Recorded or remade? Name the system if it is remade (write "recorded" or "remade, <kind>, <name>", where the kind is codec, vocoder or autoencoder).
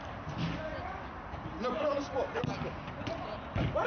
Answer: recorded